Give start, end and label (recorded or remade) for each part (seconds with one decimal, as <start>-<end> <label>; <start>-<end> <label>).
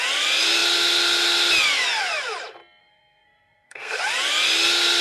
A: 0.0-2.8 recorded; 2.8-4.0 remade; 4.0-5.0 recorded